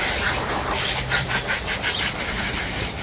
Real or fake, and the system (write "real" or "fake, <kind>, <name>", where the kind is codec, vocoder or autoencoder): real